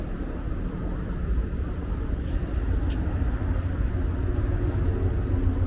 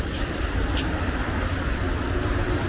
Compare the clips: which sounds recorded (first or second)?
first